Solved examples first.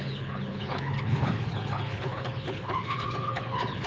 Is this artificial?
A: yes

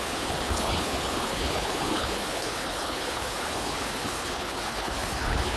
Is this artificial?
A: yes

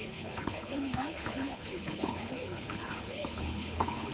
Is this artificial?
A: yes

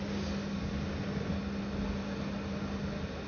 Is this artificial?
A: no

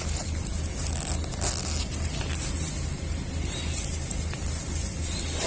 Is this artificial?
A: no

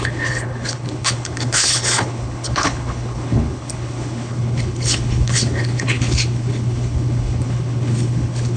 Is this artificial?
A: yes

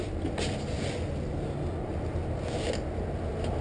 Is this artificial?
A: no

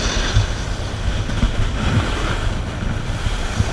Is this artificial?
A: no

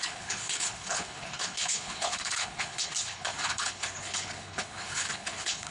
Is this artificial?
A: yes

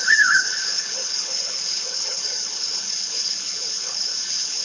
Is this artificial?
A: yes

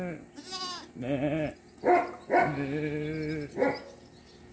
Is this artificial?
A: no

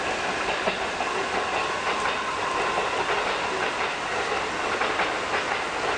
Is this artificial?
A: no